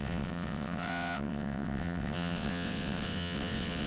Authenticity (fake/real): fake